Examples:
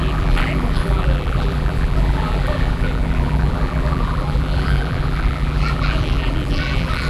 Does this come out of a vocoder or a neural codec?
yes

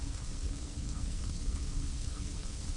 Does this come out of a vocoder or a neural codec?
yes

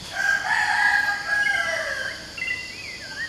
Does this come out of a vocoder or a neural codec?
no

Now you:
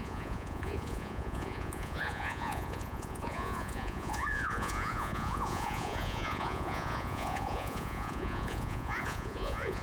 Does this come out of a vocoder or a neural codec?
yes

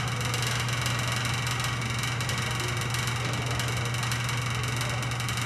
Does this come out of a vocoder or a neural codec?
no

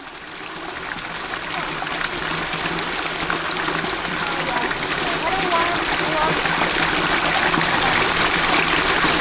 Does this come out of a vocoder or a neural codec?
no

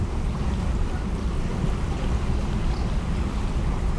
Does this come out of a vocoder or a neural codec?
no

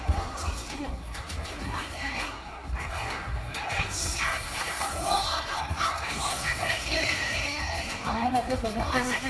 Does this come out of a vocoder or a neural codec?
yes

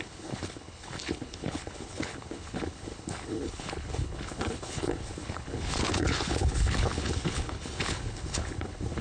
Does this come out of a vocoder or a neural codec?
yes